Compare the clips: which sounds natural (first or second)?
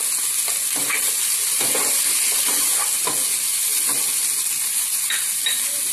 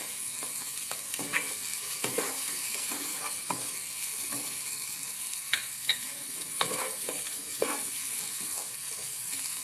first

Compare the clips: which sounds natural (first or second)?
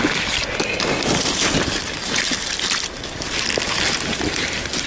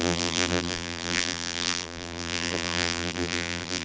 first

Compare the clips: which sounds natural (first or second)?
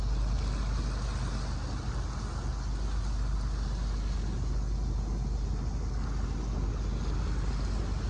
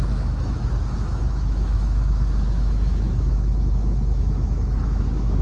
first